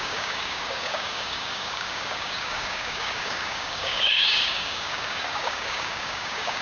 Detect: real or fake fake